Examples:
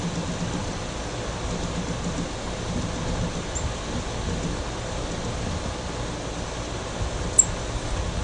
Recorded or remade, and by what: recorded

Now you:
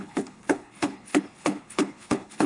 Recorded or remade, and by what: remade, codec, HILCodec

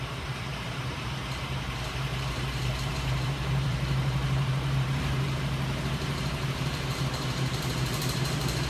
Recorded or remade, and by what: remade, vocoder, BigVGAN v2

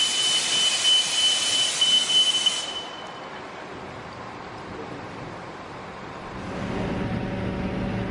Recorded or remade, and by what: recorded